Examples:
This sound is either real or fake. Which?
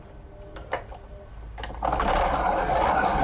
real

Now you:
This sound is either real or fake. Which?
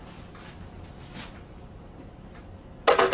real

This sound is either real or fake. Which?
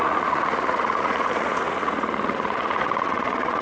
fake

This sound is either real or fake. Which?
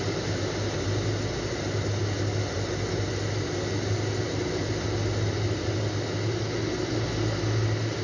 real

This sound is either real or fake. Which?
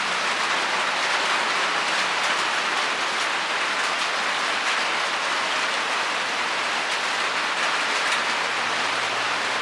real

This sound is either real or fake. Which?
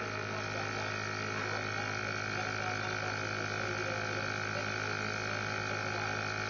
real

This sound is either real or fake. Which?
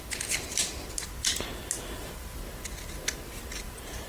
real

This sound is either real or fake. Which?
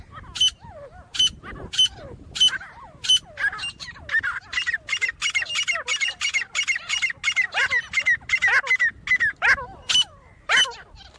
real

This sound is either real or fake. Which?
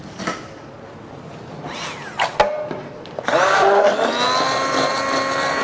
real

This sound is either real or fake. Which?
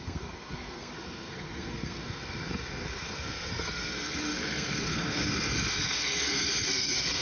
fake